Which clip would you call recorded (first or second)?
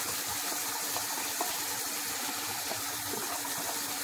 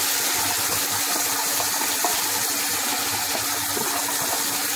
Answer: second